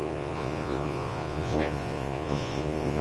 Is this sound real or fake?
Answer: fake